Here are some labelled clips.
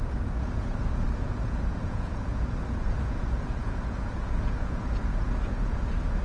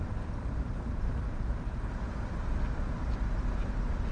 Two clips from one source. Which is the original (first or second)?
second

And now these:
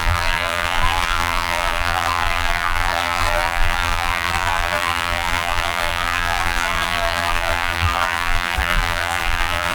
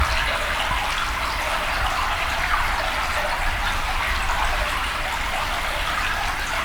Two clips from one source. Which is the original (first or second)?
second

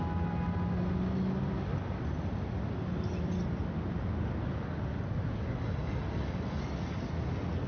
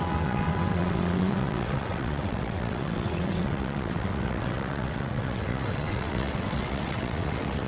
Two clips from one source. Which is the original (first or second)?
first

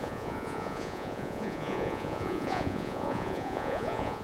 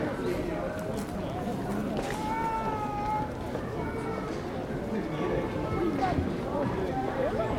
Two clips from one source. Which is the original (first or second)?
second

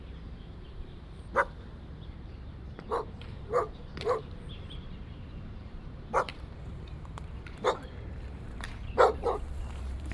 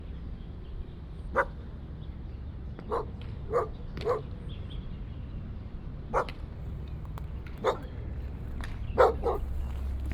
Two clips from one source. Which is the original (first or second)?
second